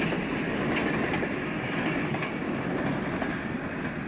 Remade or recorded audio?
recorded